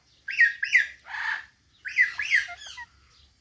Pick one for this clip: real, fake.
real